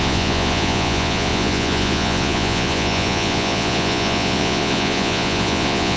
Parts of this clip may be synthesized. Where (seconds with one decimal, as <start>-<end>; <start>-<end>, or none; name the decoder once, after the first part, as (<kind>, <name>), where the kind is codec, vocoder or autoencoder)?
0.0-6.0 (vocoder, Vocos)